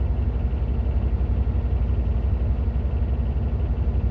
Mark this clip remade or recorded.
recorded